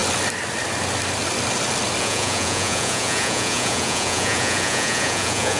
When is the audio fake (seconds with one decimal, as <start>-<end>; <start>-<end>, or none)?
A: 2.0-5.6